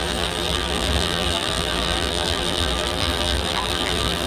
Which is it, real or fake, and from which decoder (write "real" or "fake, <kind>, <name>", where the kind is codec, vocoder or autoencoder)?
fake, vocoder, BigVGAN v2